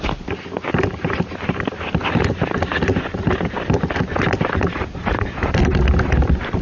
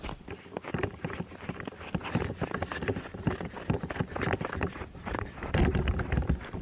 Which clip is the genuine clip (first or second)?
first